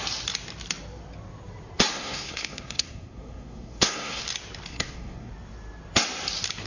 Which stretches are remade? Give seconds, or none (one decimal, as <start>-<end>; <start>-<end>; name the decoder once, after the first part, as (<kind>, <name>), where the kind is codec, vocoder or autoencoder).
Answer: 1.9-4.2 (codec, SNAC); 4.7-5.3